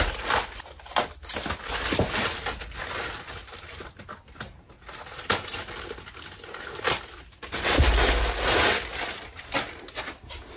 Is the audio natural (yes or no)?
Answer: yes